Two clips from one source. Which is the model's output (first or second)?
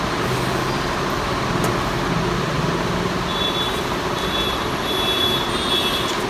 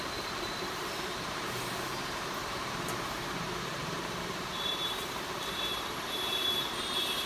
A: second